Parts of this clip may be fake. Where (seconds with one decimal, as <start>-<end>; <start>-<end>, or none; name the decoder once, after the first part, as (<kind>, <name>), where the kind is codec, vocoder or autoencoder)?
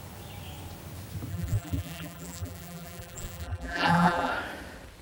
1.3-4.3 (vocoder, BigVGAN v2)